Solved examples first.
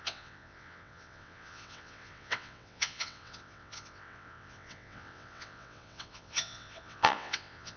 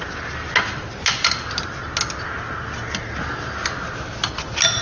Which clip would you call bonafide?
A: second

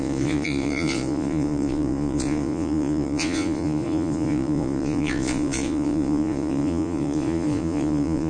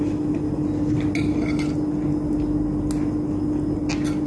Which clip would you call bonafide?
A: second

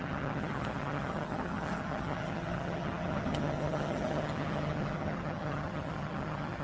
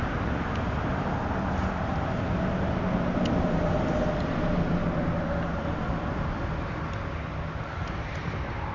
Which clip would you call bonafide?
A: second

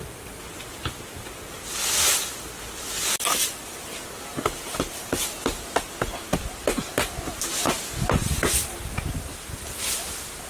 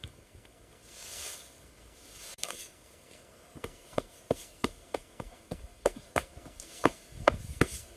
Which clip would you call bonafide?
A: first